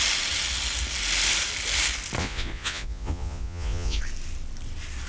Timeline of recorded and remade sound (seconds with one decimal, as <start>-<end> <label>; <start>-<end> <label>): 0.0-2.2 recorded; 2.2-4.0 remade; 4.0-5.1 recorded